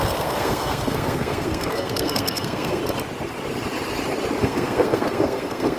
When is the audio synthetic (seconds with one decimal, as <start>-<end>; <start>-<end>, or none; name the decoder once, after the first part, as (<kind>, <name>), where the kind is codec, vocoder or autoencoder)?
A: 0.0-2.8 (codec, SNAC); 4.4-5.8